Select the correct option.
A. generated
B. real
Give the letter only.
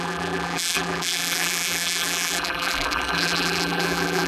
A